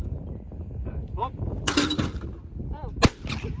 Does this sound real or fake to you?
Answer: real